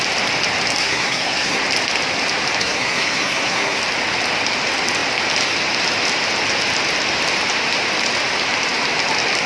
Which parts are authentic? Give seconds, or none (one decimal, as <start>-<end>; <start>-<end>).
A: 0.0-0.8; 1.6-2.6; 3.8-9.5